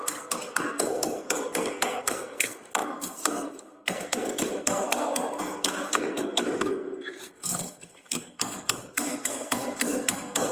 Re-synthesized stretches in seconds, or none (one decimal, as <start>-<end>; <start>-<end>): 0.0-10.5